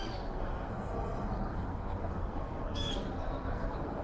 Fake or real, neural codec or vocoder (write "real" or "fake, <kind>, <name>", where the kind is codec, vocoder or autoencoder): fake, codec, SNAC